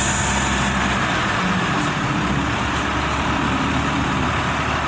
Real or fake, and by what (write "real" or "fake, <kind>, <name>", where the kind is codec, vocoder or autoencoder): real